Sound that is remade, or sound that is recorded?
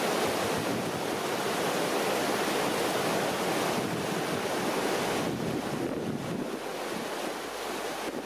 recorded